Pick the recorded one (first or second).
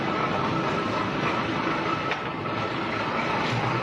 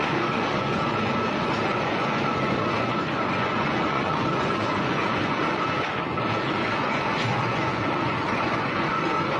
first